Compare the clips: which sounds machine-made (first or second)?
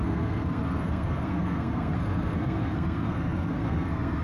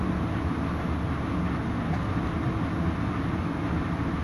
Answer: first